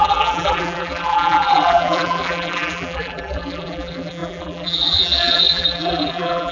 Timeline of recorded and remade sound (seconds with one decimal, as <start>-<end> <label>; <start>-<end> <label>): 0.0-6.5 remade